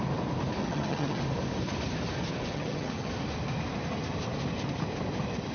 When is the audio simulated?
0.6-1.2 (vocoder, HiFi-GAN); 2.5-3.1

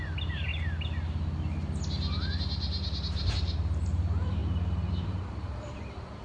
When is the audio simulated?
0.0-0.5 (vocoder, BigVGAN v2); 3.3-6.2

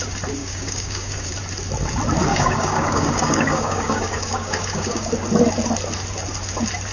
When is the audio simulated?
0.4-1.3 (codec, DAC); 2.3-5.1

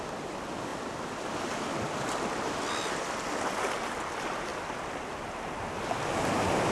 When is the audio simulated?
none

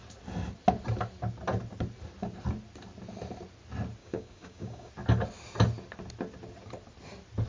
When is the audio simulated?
4.0-4.9 (codec, DAC)

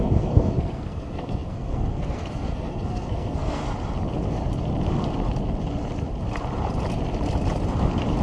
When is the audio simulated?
0.0-3.6 (codec, SNAC)

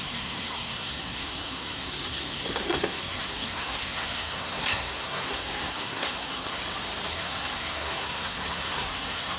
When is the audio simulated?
0.0-6.6 (codec, SNAC); 7.1-9.4